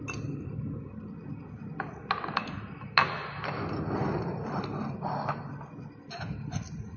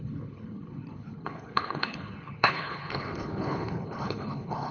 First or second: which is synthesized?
second